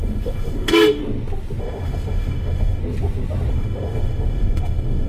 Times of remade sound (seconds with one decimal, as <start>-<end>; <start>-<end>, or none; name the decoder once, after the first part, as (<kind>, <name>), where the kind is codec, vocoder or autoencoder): 0.0-1.0 (autoencoder, DAC-VAE); 1.6-2.8; 3.5-5.1